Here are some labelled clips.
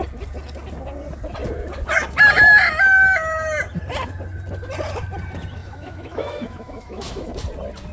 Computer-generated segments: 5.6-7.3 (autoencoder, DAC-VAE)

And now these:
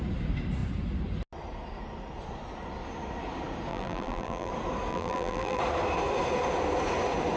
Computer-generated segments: 3.7-4.5 (vocoder, BigVGAN v2); 4.9-5.6

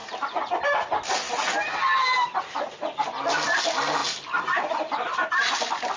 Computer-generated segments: none

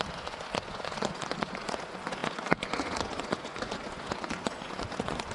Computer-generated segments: 0.0-5.3 (vocoder, Vocos)

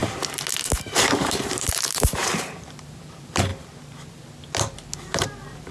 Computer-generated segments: 0.8-3.5 (vocoder, BigVGAN v2); 4.9-5.7

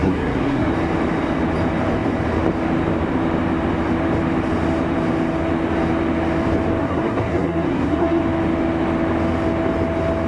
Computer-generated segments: 0.0-0.7 (codec, SNAC); 6.8-8.2

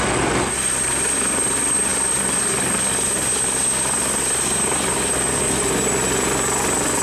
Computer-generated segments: none